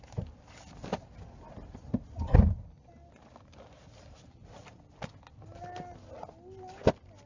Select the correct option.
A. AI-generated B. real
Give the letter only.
B